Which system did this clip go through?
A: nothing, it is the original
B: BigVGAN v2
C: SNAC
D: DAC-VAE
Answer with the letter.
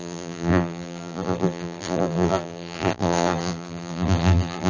B